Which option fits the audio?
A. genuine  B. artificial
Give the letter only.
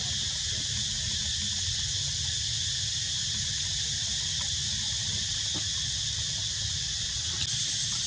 A